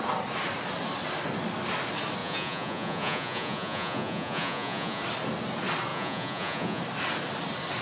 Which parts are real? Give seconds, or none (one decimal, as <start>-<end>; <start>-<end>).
0.0-2.2; 5.0-5.9; 6.8-7.8